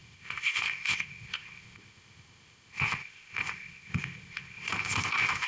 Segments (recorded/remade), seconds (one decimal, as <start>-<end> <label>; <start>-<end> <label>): 0.0-5.5 remade